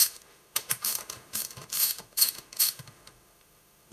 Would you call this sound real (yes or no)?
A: no